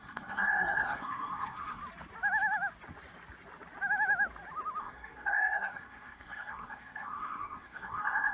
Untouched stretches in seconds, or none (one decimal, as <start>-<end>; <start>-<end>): 1.8-4.8

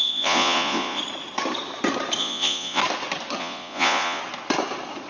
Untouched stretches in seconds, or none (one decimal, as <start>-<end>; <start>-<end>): 1.0-2.2; 2.8-3.4; 4.2-5.1

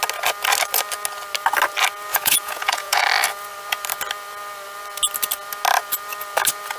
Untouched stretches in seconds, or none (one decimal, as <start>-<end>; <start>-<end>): 0.0-2.1; 3.0-6.8

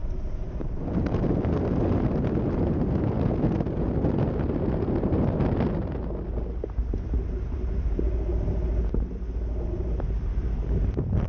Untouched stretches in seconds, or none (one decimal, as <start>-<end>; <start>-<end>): 0.0-11.3

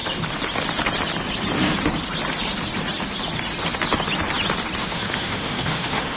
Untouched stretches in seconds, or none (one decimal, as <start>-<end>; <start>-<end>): 0.0-4.8